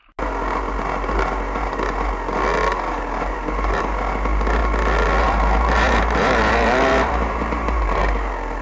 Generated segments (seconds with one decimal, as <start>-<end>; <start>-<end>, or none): 3.0-4.6; 5.2-8.6